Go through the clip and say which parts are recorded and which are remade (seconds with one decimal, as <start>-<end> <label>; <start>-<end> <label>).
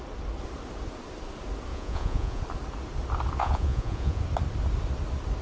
0.0-1.7 recorded; 1.7-2.4 remade; 2.4-3.4 recorded; 3.4-4.2 remade; 4.2-5.4 recorded